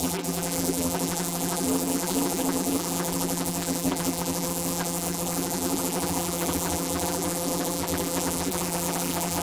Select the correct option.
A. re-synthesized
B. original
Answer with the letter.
A